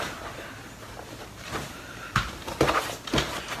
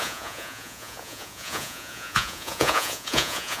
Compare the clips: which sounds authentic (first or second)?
first